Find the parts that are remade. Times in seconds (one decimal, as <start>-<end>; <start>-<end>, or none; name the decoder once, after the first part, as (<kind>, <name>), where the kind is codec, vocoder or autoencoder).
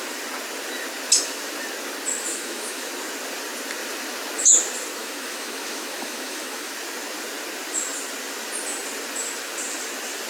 2.3-2.9 (autoencoder, DAC-VAE); 5.0-6.7